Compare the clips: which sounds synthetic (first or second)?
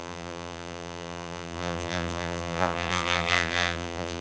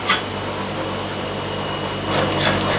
first